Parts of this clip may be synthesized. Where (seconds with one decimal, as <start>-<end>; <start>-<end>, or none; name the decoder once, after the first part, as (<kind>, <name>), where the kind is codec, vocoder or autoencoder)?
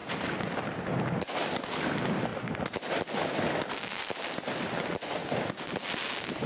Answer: none